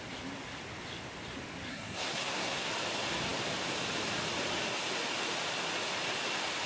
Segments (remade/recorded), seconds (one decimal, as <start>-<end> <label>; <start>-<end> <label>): 0.0-1.7 recorded; 1.7-2.7 remade; 2.7-6.7 recorded